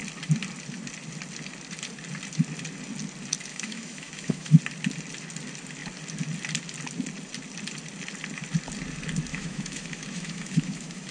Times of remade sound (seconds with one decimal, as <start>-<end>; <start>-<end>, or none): 3.5-4.6; 9.3-11.1

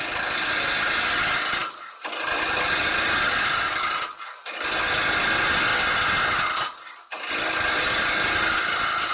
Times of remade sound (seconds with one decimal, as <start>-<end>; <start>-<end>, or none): none

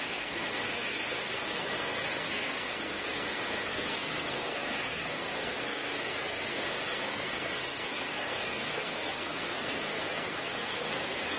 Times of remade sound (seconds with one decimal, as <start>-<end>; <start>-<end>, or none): 0.0-11.4